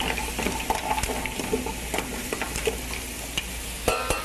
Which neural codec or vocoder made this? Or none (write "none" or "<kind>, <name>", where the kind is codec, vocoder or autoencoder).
none